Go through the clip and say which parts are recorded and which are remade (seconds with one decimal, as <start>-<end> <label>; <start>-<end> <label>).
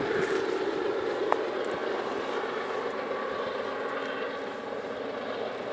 0.0-5.7 recorded